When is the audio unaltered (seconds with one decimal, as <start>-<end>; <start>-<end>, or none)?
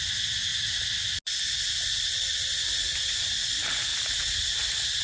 0.0-5.0